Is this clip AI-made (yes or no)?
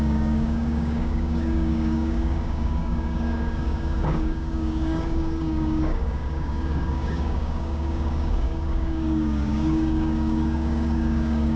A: yes